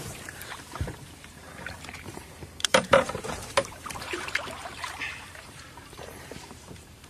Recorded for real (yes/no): no